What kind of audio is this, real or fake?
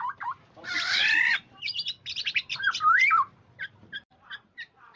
fake